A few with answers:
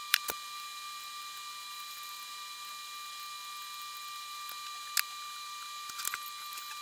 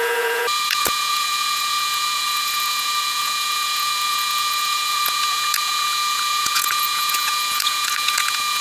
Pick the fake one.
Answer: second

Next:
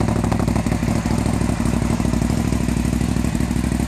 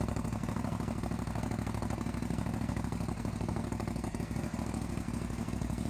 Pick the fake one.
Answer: second